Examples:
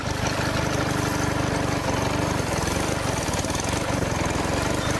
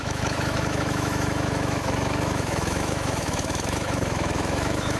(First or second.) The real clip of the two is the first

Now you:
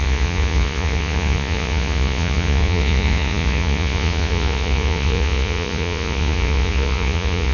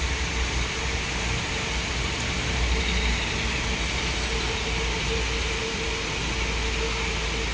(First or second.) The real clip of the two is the second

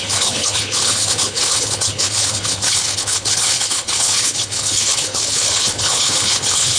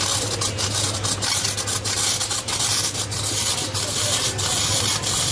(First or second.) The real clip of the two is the second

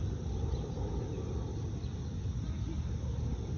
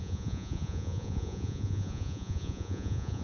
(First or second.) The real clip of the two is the first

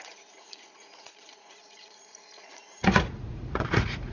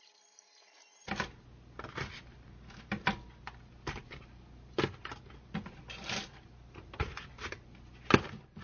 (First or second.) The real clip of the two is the second